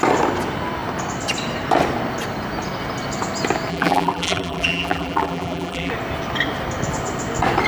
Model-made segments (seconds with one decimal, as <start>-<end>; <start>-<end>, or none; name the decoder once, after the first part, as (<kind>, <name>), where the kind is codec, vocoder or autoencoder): 3.7-5.9 (vocoder, BigVGAN v2)